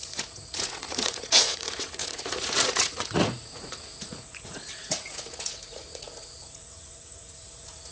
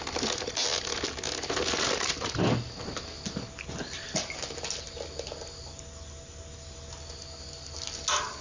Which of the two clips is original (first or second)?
second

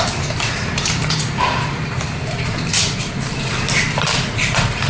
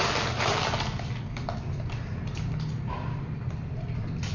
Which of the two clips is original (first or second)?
second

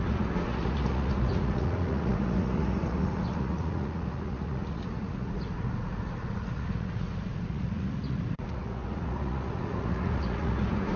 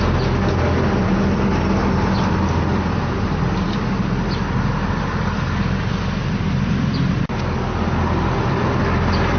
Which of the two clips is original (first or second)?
second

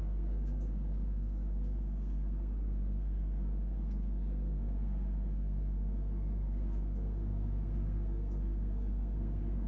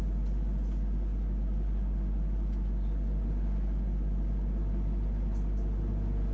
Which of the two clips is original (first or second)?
second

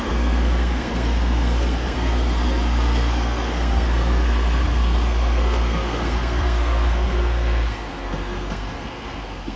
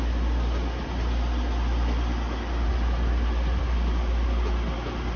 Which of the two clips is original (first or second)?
second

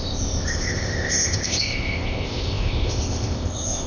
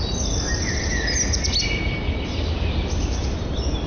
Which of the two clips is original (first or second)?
second